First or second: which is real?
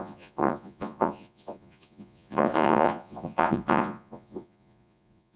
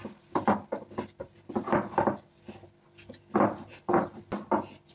second